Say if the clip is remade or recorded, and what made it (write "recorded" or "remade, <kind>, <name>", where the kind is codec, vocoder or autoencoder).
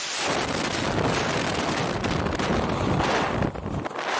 recorded